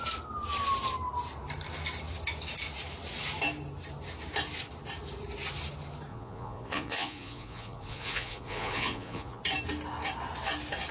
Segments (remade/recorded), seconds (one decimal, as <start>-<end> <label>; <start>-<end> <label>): 0.0-6.1 recorded; 6.1-9.4 remade; 9.4-10.9 recorded